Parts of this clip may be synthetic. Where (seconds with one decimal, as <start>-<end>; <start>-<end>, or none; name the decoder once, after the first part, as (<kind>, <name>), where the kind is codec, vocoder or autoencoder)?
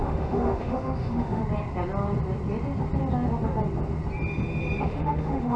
0.0-1.4 (autoencoder, DAC-VAE); 4.8-5.6